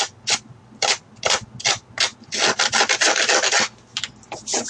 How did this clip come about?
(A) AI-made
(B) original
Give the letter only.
B